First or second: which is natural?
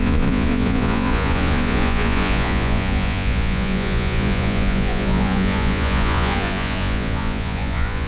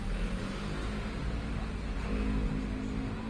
second